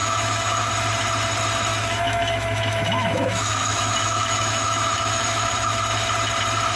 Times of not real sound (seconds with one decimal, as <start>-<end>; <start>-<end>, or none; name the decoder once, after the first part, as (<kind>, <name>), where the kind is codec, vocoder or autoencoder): 0.0-0.7 (autoencoder, DAC-VAE); 1.7-5.8

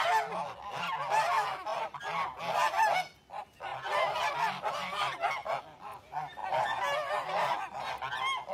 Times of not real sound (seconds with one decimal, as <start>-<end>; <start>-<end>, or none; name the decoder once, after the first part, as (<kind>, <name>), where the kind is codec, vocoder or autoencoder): none

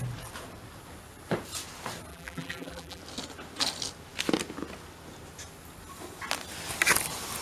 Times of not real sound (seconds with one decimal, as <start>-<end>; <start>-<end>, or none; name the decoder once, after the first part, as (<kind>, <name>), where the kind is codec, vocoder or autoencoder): 2.1-3.0 (vocoder, BigVGAN v2)

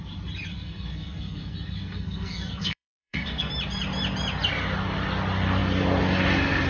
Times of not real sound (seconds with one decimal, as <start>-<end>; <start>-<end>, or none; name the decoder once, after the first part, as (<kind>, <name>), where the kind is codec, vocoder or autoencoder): 0.5-3.5 (codec, SNAC)